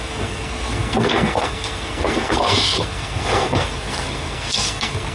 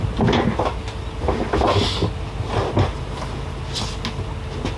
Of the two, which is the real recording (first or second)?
second